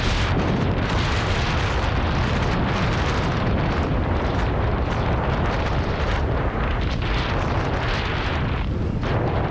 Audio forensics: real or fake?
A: fake